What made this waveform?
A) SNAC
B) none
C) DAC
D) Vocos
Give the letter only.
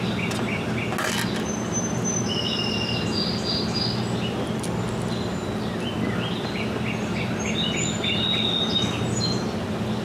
B